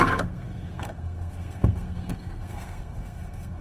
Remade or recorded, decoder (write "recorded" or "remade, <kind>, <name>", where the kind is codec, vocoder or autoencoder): remade, codec, SNAC